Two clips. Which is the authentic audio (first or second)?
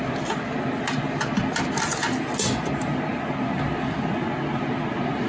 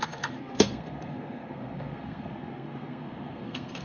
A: first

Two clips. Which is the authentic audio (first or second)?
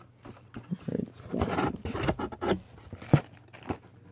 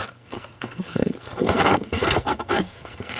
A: first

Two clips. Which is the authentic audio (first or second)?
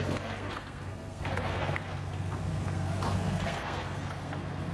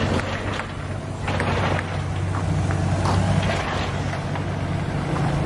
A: second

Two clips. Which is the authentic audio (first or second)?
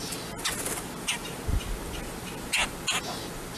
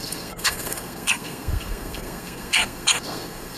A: first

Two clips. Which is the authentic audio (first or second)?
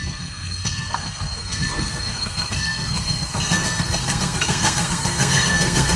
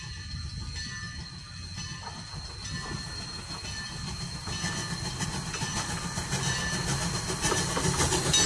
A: second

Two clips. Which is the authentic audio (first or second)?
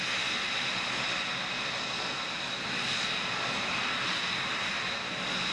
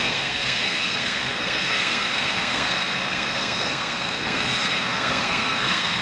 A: first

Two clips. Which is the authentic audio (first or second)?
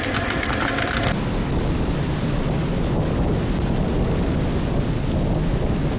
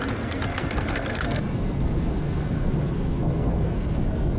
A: first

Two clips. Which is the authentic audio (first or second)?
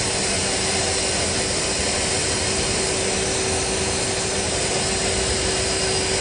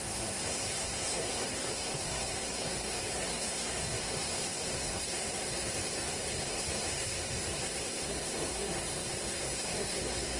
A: first